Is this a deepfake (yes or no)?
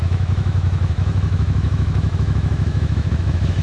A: yes